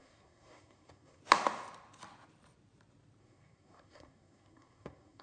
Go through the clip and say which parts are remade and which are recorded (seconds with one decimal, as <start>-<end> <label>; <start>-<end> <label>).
0.0-1.2 remade; 1.2-3.2 recorded; 3.2-5.2 remade